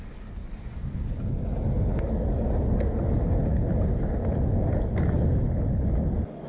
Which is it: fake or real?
real